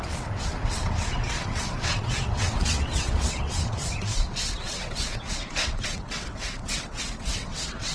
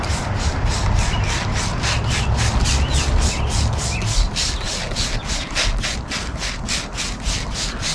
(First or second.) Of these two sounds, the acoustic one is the second